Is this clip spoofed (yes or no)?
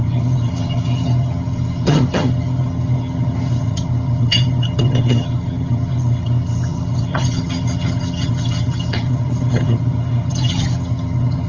yes